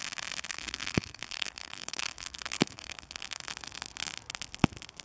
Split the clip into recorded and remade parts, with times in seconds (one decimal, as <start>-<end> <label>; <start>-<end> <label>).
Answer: 0.0-0.5 recorded; 0.5-3.5 remade; 3.5-5.0 recorded